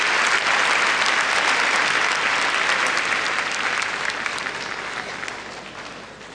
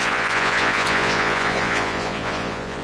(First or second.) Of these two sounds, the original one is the first